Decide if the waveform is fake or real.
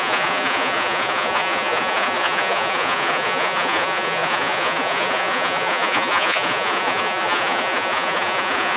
fake